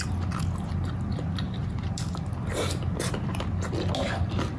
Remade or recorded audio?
recorded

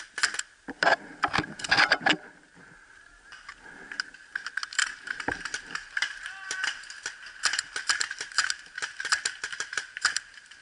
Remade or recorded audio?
recorded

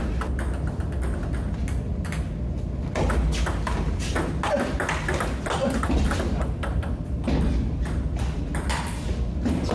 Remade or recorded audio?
recorded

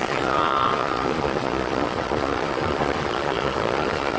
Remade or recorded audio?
remade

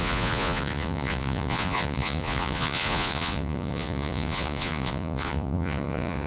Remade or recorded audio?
remade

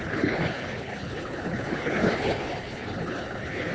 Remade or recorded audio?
remade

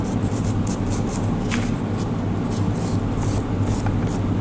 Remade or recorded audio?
recorded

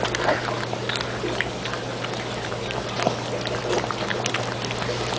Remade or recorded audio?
recorded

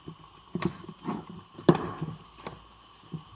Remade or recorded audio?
remade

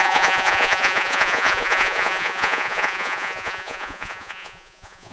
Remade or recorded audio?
remade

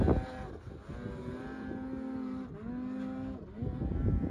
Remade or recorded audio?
recorded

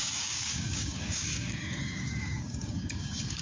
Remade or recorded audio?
remade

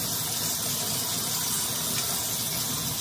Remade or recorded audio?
recorded